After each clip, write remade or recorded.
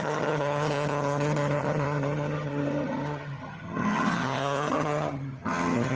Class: remade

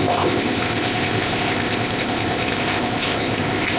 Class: remade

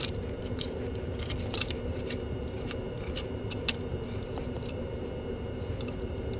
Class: remade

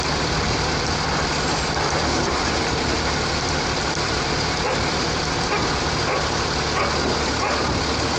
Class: remade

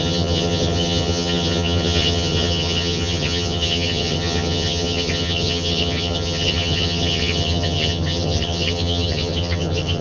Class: remade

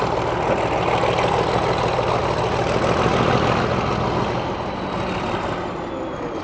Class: recorded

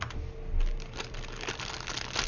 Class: recorded